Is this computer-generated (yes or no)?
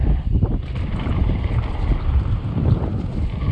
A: no